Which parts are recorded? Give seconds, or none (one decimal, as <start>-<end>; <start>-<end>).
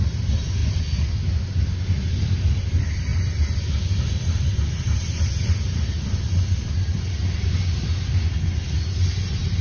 0.0-9.6